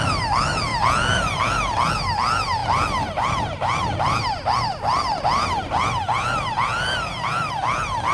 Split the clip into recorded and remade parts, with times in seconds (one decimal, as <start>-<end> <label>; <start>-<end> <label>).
0.0-8.1 recorded